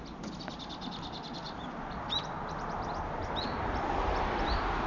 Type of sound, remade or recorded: recorded